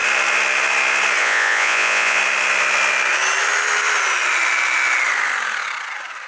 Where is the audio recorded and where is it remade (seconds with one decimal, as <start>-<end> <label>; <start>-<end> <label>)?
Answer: 0.0-1.2 recorded; 1.2-2.2 remade; 2.2-6.3 recorded